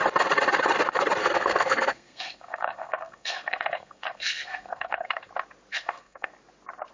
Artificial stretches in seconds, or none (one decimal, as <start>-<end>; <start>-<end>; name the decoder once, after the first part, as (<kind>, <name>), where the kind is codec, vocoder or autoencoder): 1.2-5.3 (codec, SNAC); 5.7-6.3